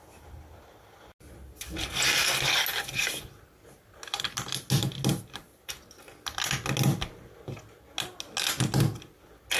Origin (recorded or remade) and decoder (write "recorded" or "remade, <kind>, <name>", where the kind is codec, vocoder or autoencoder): recorded